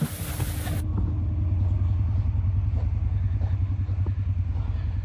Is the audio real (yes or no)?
yes